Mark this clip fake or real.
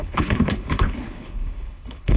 fake